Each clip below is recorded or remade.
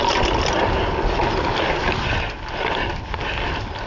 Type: recorded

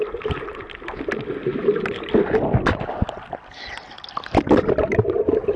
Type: recorded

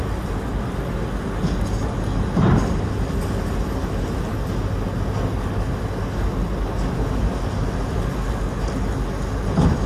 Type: recorded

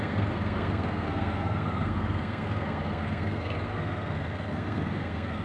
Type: remade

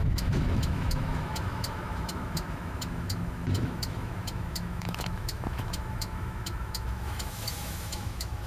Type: remade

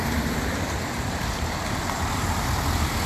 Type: remade